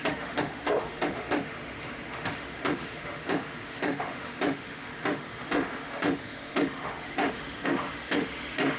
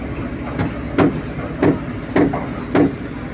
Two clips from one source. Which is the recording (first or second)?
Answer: second